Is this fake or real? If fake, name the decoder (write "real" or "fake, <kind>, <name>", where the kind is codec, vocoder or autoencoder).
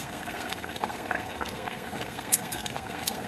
fake, codec, SNAC